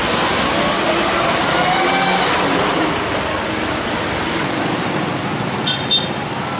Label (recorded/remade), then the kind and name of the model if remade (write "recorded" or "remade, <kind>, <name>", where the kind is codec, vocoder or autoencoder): recorded